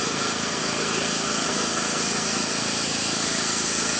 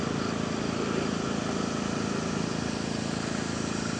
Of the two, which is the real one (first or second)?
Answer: second